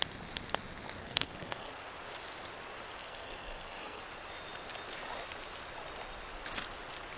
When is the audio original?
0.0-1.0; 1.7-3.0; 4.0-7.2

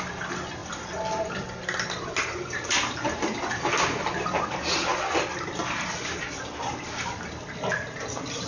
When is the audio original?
0.0-8.5

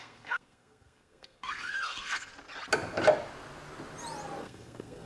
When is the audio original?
2.3-4.4

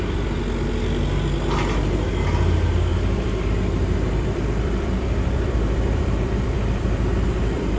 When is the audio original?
0.0-2.9

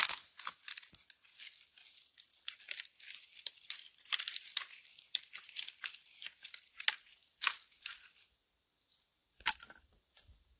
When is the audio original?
0.0-2.3; 6.8-10.6

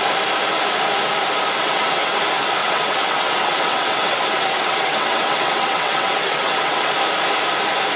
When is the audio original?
0.0-1.6; 2.2-2.6; 6.9-8.0